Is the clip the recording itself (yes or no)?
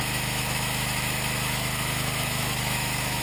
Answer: no